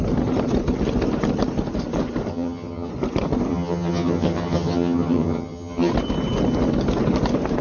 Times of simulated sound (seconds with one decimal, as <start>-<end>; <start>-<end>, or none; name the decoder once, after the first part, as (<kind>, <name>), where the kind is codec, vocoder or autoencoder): 2.3-2.9 (vocoder, HiFi-GAN); 3.5-5.9